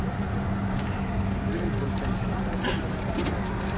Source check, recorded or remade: remade